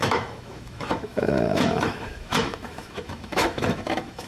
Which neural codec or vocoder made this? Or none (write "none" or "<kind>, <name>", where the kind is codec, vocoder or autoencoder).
autoencoder, DAC-VAE